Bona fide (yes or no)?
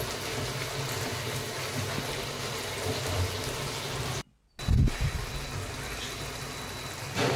yes